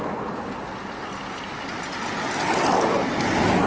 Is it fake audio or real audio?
real